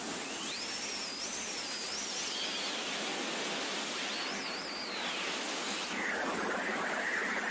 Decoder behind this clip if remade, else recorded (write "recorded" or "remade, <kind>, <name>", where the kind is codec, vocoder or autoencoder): recorded